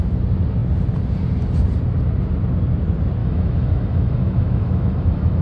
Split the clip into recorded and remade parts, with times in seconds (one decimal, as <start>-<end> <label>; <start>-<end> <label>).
0.0-3.2 recorded; 3.2-5.4 remade